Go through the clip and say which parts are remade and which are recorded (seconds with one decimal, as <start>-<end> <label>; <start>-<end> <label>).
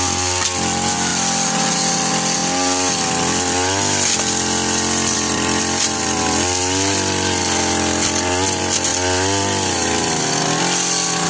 0.0-11.3 recorded